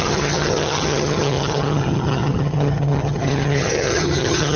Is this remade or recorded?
remade